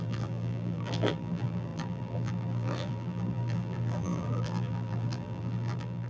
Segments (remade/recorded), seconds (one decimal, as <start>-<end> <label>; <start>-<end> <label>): 0.0-6.1 remade